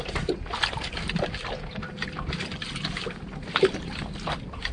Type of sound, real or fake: real